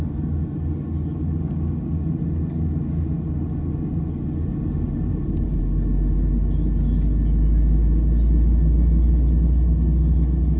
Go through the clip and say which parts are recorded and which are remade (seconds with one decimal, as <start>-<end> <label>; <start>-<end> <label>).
0.0-4.5 recorded; 4.5-5.6 remade; 5.6-10.6 recorded